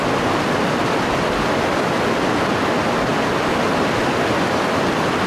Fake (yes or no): no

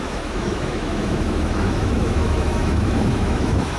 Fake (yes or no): yes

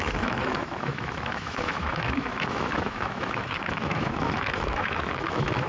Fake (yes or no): yes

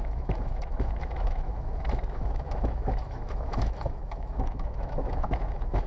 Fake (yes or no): yes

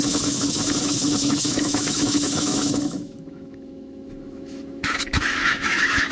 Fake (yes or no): yes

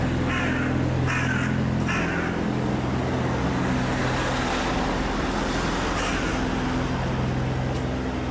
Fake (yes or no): no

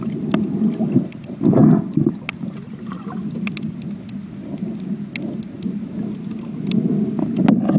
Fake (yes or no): no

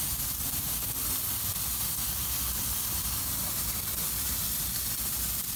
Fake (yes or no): no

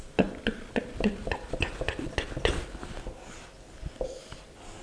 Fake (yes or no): no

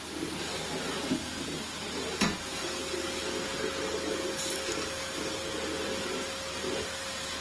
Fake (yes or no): no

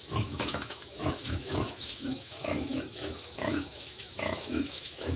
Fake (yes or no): yes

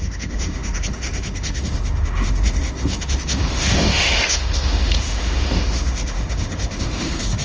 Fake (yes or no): yes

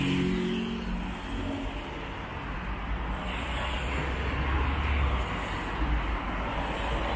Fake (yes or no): no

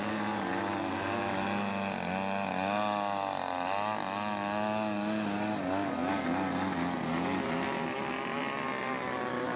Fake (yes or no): no